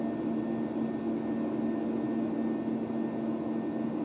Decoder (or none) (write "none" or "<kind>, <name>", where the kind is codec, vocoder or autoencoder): none